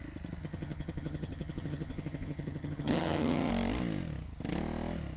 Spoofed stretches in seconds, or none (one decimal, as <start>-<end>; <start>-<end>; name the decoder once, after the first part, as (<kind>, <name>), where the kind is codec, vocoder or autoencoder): 0.4-3.5 (vocoder, HiFi-GAN)